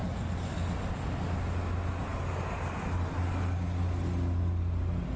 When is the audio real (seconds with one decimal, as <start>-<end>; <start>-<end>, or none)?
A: 0.0-5.2